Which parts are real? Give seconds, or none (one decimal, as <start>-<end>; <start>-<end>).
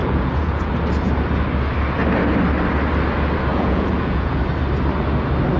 0.7-3.5; 4.4-5.6